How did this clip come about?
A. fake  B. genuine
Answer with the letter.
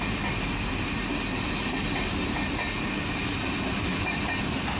B